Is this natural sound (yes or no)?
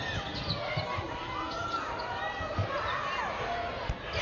yes